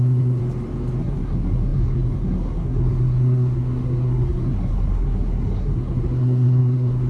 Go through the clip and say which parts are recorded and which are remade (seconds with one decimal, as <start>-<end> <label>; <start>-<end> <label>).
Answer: 0.0-0.4 remade; 0.4-1.0 recorded; 1.0-7.1 remade